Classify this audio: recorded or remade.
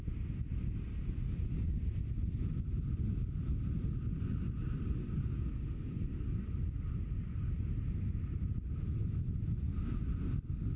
recorded